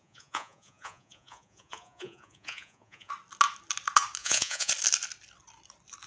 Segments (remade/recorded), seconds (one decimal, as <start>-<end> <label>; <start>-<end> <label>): 0.0-3.1 remade; 3.1-4.2 recorded; 4.2-4.7 remade; 4.7-6.1 recorded